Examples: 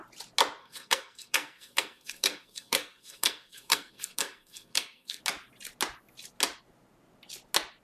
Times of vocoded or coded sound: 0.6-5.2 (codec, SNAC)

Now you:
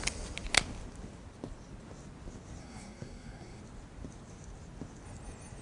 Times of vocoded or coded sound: 2.6-3.6 (codec, SNAC)

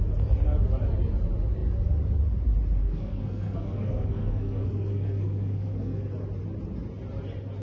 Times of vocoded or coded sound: 2.8-6.0 (codec, SNAC)

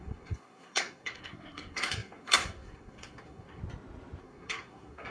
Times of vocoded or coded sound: 0.0-3.6 (codec, SNAC); 4.2-5.1

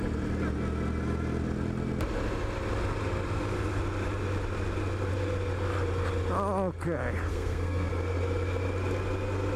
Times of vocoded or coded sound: 7.3-7.9 (codec, SNAC)